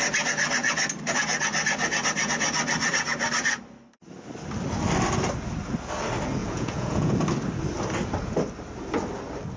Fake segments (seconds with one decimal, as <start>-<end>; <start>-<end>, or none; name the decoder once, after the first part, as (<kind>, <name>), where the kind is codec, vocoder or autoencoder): 6.4-7.1 (vocoder, Vocos)